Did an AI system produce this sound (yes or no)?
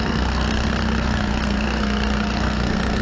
yes